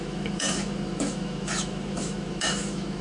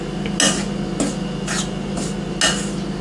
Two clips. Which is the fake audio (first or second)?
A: first